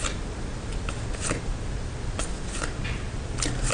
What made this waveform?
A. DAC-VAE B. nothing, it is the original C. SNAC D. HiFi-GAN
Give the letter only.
B